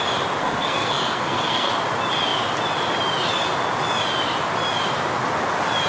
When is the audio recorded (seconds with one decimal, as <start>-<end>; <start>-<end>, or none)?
0.0-0.4; 1.7-5.9